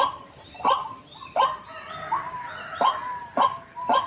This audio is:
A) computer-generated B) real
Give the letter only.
B